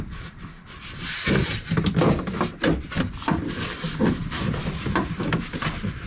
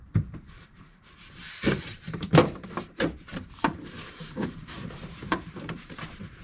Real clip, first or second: first